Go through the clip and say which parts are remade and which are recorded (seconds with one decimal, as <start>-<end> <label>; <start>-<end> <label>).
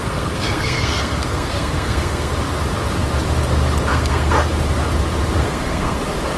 0.0-2.3 remade; 2.3-3.9 recorded; 3.9-4.5 remade; 4.5-5.4 recorded; 5.4-6.0 remade; 6.0-6.4 recorded